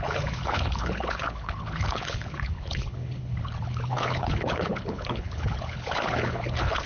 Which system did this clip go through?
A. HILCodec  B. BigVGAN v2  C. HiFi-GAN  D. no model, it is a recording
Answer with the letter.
A